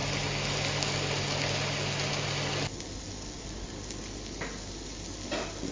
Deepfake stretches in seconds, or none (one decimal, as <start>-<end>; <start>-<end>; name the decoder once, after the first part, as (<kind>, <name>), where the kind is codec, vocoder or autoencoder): none